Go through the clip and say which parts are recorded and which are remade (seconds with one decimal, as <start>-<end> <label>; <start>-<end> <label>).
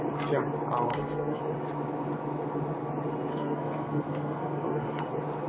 0.0-0.9 recorded; 0.9-1.4 remade; 1.4-3.3 recorded; 3.3-5.0 remade; 5.0-5.5 recorded